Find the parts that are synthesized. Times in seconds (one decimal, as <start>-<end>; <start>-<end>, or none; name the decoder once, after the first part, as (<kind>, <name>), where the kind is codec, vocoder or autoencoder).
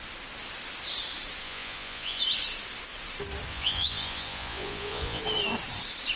1.4-2.2 (vocoder, Vocos); 3.5-5.2